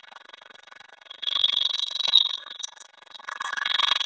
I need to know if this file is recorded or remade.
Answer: remade